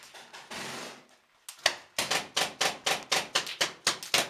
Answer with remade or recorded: recorded